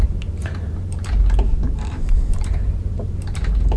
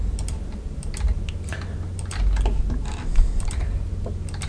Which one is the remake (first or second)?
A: first